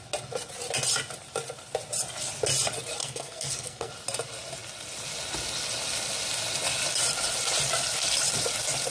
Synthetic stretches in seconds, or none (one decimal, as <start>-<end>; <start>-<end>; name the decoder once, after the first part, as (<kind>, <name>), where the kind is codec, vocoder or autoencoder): 3.0-3.9 (codec, SNAC)